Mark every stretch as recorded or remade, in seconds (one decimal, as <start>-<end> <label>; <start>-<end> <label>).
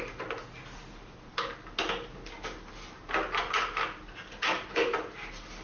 0.0-5.6 recorded